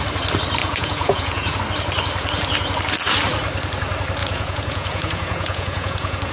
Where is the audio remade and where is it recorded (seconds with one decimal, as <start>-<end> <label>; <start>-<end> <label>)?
0.0-0.6 recorded; 0.6-1.6 remade; 1.6-4.2 recorded; 4.2-6.3 remade